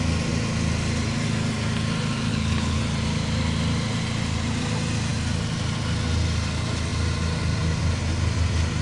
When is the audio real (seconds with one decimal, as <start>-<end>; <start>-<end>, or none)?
0.0-2.3; 2.8-8.8